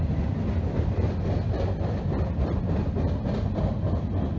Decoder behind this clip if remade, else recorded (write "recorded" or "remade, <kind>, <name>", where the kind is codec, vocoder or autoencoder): recorded